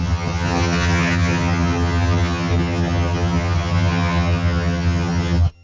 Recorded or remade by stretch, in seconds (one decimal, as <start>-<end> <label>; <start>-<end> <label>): 0.0-5.6 remade